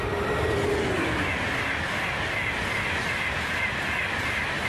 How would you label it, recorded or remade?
recorded